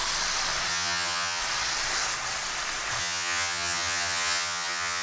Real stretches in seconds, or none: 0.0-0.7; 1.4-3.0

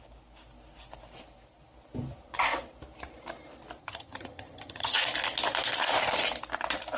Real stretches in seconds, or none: 0.0-3.8; 5.0-7.0